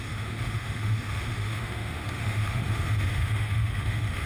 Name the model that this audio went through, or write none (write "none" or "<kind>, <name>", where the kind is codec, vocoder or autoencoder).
autoencoder, DAC-VAE